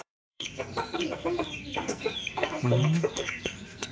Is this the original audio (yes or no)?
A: no